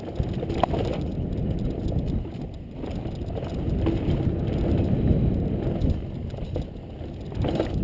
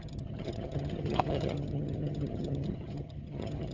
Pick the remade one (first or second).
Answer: second